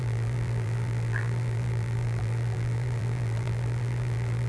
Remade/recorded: remade